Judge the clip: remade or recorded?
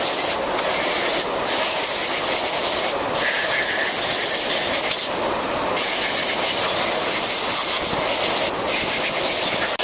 recorded